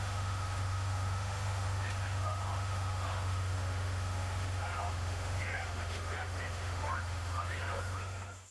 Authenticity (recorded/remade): remade